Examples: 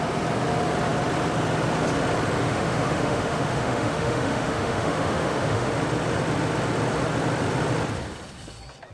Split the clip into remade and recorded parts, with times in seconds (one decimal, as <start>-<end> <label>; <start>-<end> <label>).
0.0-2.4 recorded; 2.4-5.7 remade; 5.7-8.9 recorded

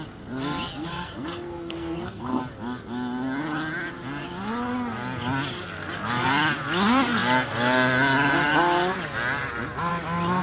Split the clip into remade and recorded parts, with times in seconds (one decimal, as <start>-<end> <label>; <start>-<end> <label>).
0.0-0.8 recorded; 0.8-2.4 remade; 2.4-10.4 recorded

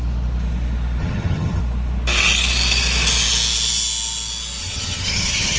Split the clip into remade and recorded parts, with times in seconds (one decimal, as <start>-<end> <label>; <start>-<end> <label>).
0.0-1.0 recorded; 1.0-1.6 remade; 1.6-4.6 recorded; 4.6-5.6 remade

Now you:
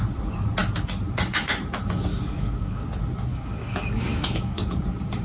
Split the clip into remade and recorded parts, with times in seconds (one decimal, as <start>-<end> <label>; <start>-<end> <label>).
0.0-2.1 recorded; 2.1-2.9 remade; 2.9-3.3 recorded; 3.3-4.7 remade; 4.7-5.2 recorded

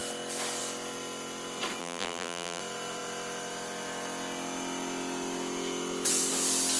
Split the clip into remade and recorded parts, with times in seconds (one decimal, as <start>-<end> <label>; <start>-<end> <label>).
0.0-1.8 recorded; 1.8-2.6 remade; 2.6-6.8 recorded